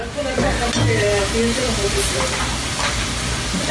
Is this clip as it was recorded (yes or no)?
yes